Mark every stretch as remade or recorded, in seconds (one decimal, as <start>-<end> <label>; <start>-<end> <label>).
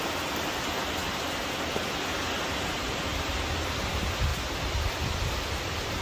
0.0-3.1 recorded; 3.1-3.9 remade; 3.9-6.0 recorded